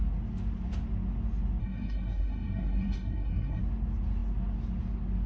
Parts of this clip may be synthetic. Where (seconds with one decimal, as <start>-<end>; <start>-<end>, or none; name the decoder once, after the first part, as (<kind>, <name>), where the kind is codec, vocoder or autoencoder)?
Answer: 1.6-3.6 (codec, SNAC)